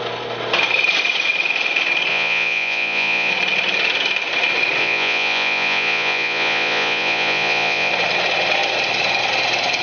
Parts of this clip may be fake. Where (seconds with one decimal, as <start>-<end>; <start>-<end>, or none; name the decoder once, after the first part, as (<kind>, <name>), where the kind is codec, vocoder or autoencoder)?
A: 2.1-3.3 (vocoder, Vocos); 4.8-7.9